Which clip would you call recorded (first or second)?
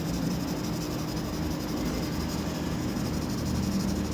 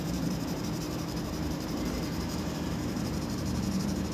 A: first